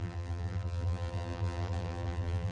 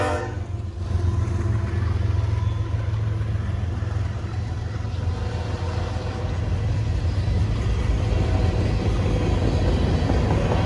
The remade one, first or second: first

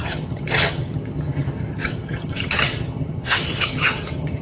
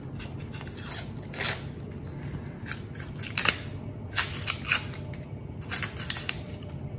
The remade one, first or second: first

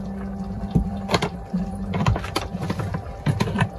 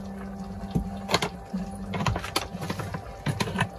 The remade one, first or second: first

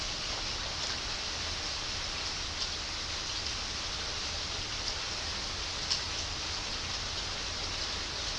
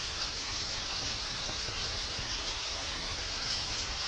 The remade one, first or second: second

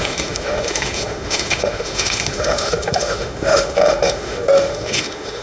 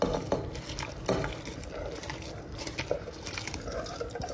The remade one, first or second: first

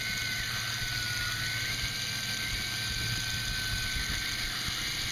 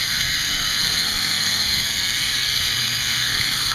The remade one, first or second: second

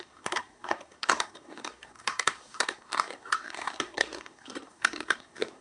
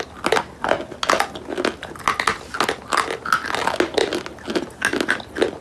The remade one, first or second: first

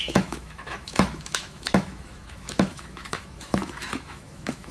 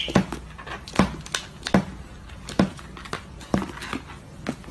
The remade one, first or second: first